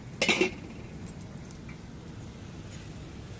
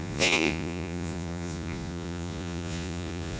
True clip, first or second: first